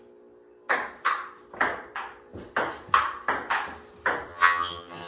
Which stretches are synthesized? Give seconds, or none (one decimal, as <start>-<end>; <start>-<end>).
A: 4.3-5.1